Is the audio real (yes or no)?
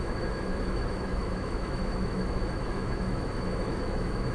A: no